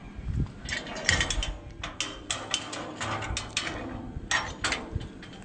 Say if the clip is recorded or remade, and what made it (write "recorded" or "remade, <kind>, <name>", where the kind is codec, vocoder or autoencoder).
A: recorded